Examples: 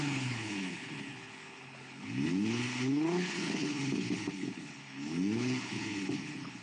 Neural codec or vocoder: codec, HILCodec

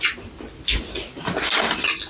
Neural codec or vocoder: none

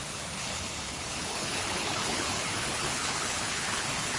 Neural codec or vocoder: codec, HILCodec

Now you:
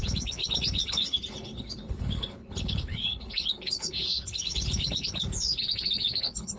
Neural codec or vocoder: codec, HILCodec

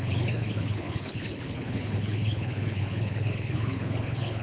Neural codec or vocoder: codec, HILCodec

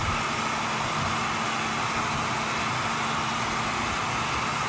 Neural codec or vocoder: none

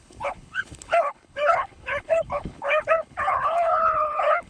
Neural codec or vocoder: codec, HILCodec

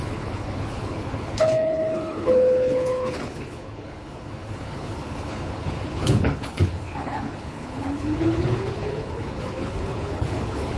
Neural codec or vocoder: codec, HILCodec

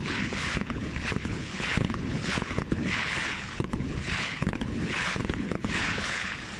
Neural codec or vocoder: codec, HILCodec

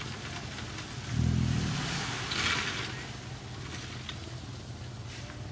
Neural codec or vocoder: none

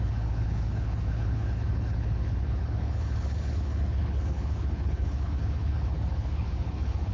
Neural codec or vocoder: codec, HILCodec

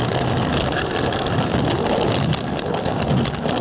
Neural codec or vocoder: none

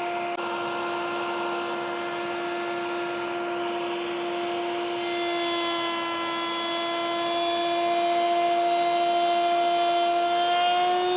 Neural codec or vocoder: none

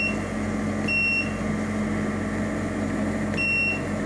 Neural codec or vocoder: none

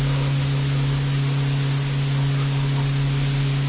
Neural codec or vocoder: none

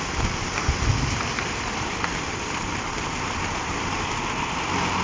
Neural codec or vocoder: none